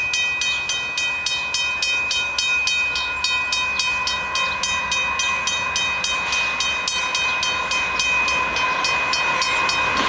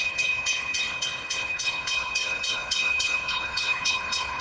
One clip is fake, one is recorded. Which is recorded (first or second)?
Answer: first